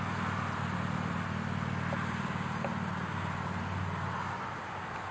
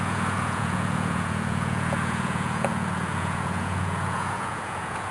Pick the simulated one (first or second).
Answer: second